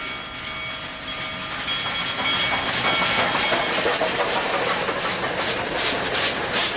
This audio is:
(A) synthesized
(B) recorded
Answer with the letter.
B